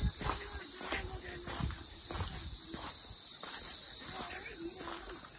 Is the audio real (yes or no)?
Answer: yes